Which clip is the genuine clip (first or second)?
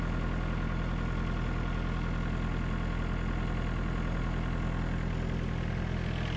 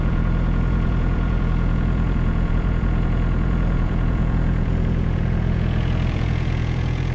first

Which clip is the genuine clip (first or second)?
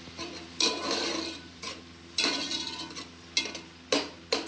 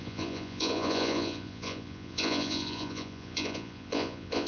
first